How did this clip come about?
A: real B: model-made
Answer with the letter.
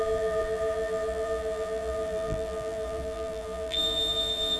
B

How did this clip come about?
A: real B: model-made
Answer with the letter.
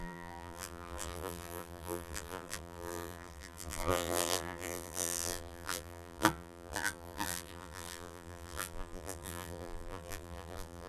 B